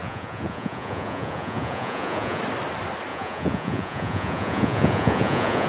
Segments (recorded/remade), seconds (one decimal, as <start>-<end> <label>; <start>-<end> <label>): 0.0-2.4 remade; 2.4-3.1 recorded; 3.1-5.7 remade